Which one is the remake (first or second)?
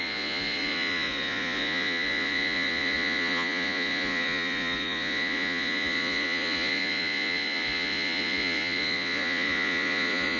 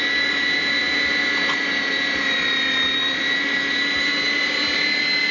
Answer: first